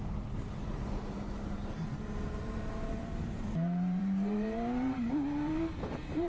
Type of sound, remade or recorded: remade